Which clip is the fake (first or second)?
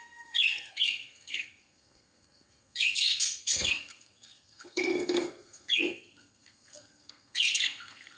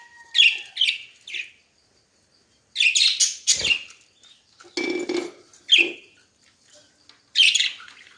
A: first